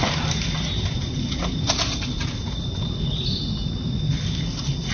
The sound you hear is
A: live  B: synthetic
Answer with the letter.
A